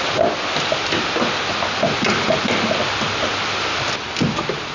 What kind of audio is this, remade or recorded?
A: recorded